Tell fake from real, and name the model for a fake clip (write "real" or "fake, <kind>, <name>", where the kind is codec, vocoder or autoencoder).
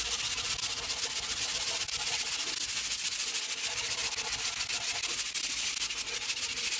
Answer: real